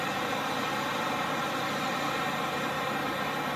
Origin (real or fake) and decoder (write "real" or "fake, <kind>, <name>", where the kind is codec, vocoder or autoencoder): real